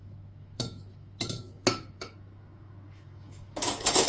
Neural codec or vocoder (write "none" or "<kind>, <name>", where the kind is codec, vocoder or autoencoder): autoencoder, DAC-VAE